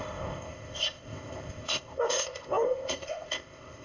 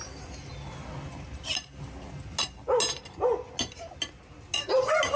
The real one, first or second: second